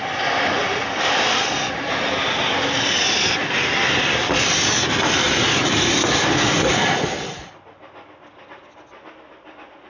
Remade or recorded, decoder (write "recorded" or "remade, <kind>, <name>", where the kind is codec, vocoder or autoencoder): recorded